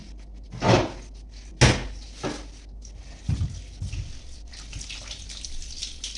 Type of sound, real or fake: real